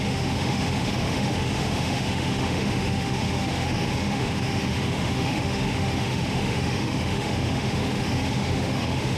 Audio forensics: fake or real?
fake